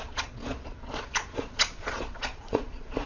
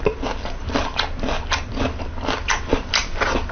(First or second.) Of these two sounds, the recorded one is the second